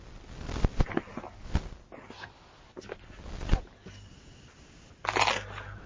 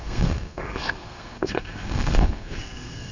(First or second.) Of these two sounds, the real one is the first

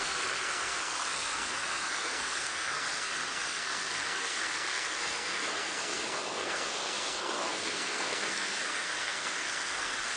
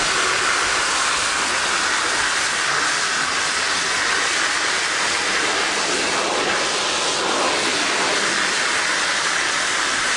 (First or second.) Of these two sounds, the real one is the second